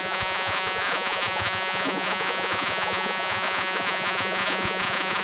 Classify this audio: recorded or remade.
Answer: remade